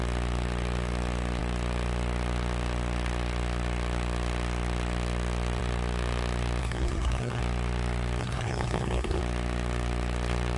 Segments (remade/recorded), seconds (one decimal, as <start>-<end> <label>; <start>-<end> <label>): 0.0-6.6 recorded; 6.6-7.4 remade; 7.4-8.2 recorded; 8.2-9.2 remade; 9.2-10.6 recorded